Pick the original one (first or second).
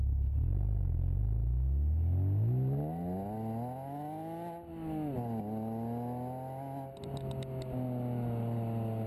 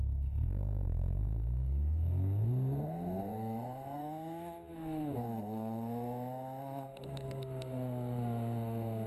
first